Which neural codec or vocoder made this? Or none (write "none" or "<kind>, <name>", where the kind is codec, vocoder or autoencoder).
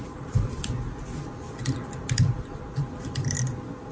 none